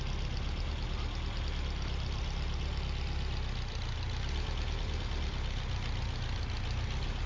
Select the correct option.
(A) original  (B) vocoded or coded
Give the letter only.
A